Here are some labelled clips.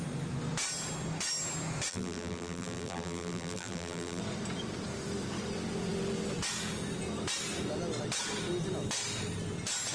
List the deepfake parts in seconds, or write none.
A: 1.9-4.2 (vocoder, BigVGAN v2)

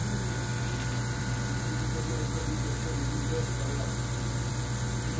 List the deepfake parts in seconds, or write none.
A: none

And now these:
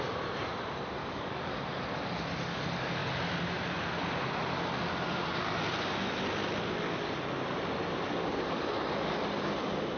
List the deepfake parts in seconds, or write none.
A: 1.0-1.6 (codec, DAC)

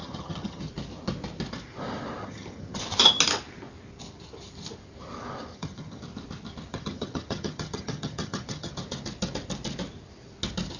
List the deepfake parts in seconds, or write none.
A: 0.0-0.7 (vocoder, HiFi-GAN); 2.2-2.8; 5.5-6.0; 6.7-8.7

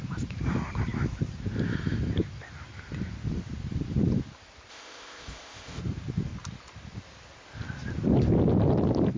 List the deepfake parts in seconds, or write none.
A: 4.7-5.8 (codec, ZipCodec)